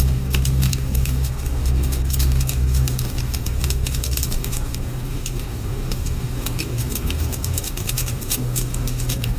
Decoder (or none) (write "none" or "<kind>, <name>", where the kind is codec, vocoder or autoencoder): codec, DAC